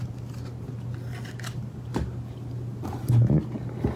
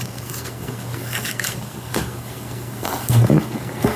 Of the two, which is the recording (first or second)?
first